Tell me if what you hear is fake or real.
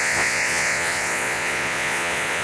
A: fake